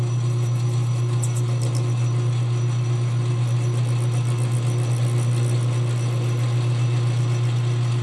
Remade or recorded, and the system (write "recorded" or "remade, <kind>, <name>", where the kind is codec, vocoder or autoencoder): recorded